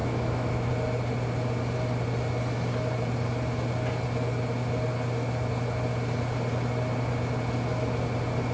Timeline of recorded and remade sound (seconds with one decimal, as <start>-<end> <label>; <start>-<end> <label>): 0.0-0.7 remade; 0.7-8.5 recorded